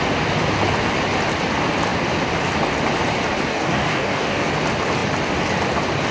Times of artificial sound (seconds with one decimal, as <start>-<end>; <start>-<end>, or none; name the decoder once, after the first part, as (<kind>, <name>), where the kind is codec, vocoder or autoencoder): 3.5-4.5 (codec, DAC)

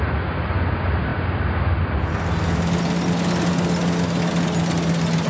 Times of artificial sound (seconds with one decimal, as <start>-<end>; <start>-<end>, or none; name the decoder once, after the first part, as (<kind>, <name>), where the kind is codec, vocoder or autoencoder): none

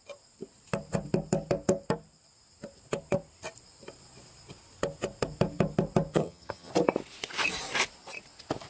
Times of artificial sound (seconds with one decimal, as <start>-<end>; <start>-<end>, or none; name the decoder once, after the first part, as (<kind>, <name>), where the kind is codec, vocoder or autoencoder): 6.1-6.7 (vocoder, HiFi-GAN)

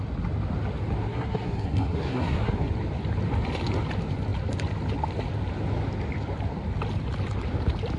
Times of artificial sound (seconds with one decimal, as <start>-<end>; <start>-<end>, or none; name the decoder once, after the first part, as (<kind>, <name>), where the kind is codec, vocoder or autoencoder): 1.0-2.7 (codec, SNAC)

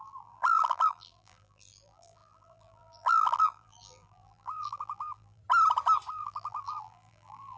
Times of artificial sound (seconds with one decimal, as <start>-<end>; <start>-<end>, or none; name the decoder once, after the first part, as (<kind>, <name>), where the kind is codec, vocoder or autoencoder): 0.0-5.4 (vocoder, BigVGAN v2); 6.1-7.6